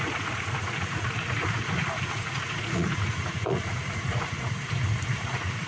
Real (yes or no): no